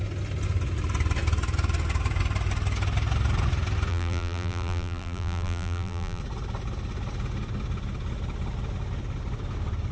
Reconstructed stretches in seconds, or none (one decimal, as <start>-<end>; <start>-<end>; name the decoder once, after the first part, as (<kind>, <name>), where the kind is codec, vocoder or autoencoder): 3.9-6.2 (vocoder, BigVGAN v2)